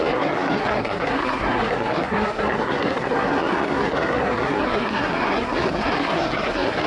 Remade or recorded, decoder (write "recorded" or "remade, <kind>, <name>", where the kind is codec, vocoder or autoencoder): remade, codec, SNAC